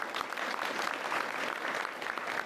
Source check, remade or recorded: recorded